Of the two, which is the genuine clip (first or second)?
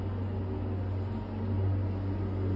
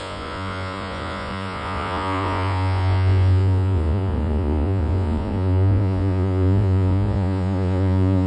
first